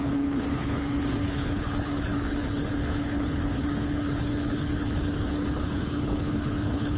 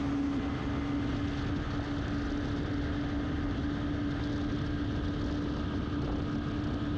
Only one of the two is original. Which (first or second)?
second